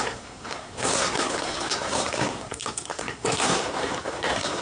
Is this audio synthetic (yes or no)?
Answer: yes